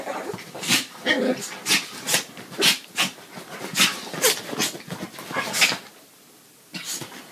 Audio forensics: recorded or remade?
recorded